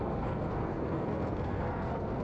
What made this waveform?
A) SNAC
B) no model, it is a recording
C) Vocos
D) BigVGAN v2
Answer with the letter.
A